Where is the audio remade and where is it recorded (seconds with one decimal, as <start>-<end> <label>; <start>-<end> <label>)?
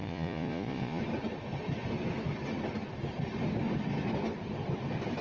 0.0-1.0 remade; 1.0-5.2 recorded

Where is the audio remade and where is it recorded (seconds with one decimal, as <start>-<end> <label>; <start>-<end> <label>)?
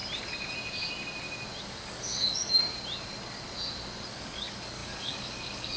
0.0-1.6 recorded; 1.6-2.6 remade; 2.6-4.1 recorded; 4.1-5.8 remade